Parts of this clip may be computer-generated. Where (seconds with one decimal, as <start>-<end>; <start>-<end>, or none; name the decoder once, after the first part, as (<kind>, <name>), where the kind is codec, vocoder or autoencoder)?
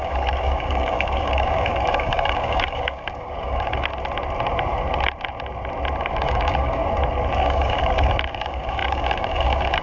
0.0-3.9 (codec, DAC); 6.0-6.8; 7.3-9.8